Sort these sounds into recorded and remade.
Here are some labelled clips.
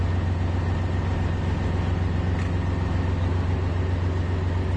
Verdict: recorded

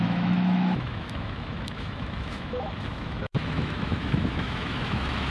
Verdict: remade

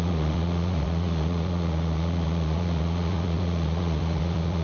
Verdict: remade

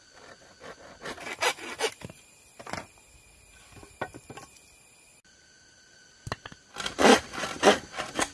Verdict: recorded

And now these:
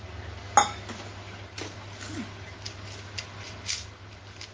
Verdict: recorded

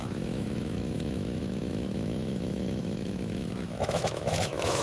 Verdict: remade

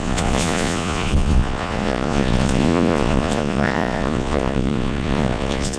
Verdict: remade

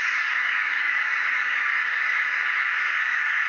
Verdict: remade